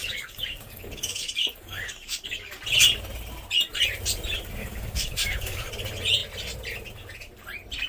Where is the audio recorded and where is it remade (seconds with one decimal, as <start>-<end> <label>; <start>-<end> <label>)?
0.0-2.6 remade; 2.6-4.6 recorded; 4.6-5.7 remade; 5.7-7.9 recorded